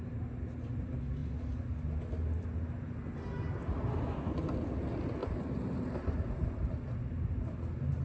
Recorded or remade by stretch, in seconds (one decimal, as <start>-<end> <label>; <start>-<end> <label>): 0.0-5.2 recorded; 5.2-6.7 remade; 6.7-8.0 recorded